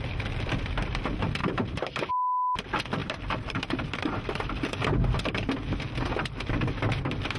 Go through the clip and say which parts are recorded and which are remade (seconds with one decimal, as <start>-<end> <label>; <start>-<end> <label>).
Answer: 0.0-1.4 recorded; 1.4-2.1 remade; 2.1-3.0 recorded; 3.0-4.5 remade; 4.5-7.4 recorded